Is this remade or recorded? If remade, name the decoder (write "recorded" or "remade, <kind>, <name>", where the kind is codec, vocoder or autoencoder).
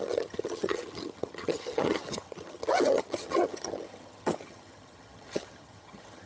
remade, vocoder, HiFi-GAN